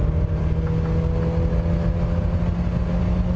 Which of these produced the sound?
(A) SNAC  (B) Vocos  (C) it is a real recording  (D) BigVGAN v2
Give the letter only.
C